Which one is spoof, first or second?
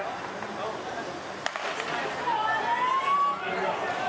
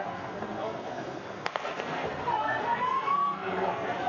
second